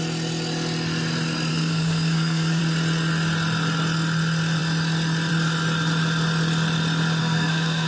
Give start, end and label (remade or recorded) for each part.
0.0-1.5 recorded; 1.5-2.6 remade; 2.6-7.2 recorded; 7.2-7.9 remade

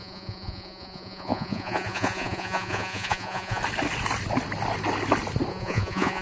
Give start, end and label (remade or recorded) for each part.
0.0-3.6 remade; 3.6-5.5 recorded; 5.5-6.2 remade

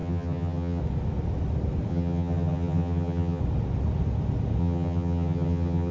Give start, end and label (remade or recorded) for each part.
0.0-0.8 remade; 0.8-1.9 recorded; 1.9-3.4 remade; 3.4-4.6 recorded; 4.6-5.9 remade

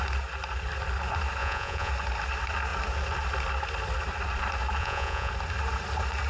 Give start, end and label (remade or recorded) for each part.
0.0-1.4 recorded; 1.4-1.9 remade; 1.9-4.8 recorded; 4.8-5.3 remade; 5.3-6.3 recorded